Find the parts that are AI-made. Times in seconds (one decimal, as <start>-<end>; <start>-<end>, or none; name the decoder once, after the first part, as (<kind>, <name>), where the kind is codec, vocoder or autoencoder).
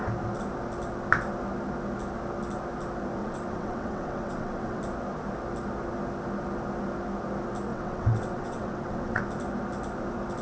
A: 3.2-4.8 (vocoder, WaveNeXt); 7.7-9.2